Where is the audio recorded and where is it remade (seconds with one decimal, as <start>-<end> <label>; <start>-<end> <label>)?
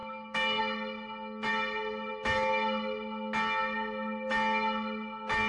0.0-0.6 remade; 0.6-5.5 recorded